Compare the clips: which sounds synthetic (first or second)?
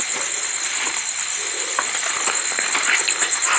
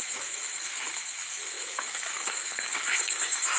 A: second